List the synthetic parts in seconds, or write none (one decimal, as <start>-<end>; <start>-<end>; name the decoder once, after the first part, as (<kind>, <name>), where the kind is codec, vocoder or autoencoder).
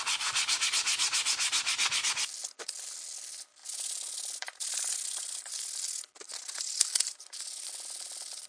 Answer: none